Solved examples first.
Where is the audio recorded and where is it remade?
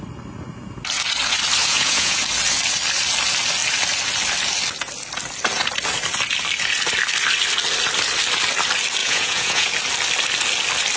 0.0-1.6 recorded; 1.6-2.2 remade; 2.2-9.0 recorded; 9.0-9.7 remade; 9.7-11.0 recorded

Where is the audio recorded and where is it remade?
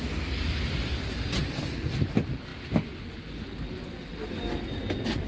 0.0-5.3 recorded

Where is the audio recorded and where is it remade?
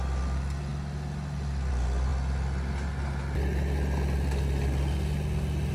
0.0-0.7 remade; 0.7-1.7 recorded; 1.7-2.1 remade; 2.1-5.7 recorded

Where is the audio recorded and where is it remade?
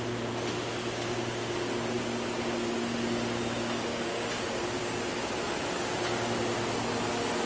0.0-3.9 recorded; 3.9-4.4 remade; 4.4-7.5 recorded